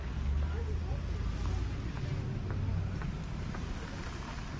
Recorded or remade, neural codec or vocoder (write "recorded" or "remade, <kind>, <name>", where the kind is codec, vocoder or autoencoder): recorded